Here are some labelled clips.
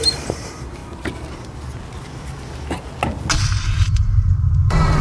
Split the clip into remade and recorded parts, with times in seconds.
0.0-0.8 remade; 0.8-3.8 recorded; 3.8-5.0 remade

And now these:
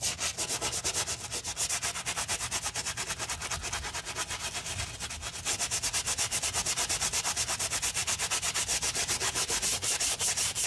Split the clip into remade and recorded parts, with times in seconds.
0.0-8.0 recorded; 8.0-10.7 remade